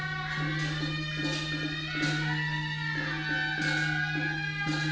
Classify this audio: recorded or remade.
recorded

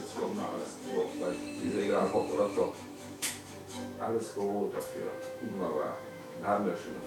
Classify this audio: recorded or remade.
remade